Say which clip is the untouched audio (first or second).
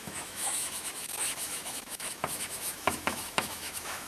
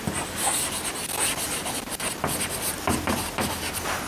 second